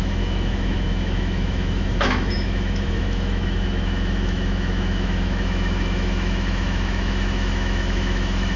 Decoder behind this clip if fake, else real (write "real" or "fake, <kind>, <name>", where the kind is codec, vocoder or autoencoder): fake, autoencoder, DAC-VAE